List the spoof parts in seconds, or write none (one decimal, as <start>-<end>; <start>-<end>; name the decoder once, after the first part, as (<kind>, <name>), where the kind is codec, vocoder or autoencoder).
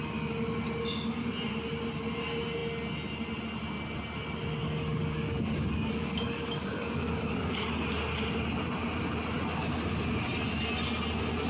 4.6-7.6 (codec, DAC)